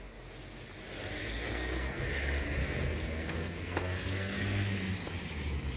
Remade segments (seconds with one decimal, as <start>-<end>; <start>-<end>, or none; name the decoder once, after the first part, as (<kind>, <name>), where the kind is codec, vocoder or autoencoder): 1.2-2.1 (codec, SNAC); 2.6-4.9